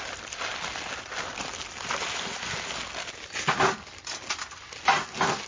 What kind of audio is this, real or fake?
real